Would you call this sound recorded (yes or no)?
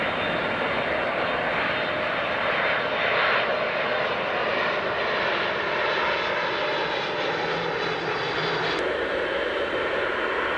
yes